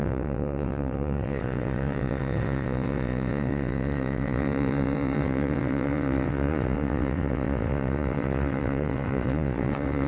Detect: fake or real fake